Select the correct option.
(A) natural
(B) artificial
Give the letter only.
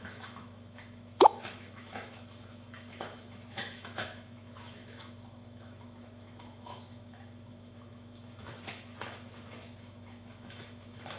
B